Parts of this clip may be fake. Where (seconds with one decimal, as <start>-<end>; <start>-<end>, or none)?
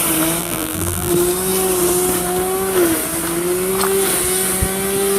0.4-1.1